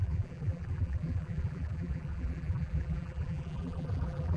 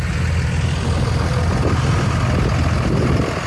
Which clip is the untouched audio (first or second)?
second